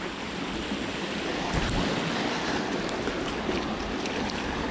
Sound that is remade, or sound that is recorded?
recorded